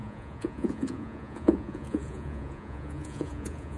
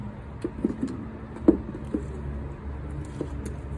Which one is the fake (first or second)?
first